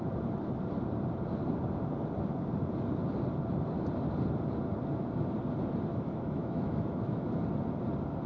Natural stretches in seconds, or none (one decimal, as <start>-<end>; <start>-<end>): 0.0-5.9; 7.4-8.3